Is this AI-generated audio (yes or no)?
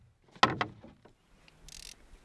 no